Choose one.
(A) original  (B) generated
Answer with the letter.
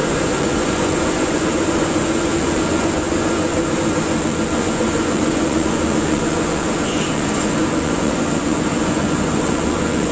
B